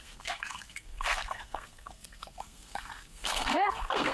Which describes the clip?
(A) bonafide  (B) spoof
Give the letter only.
B